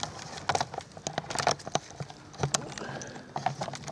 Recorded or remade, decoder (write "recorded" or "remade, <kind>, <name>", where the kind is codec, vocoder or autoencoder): recorded